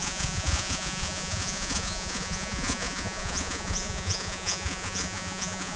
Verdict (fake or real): fake